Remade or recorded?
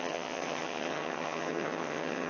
remade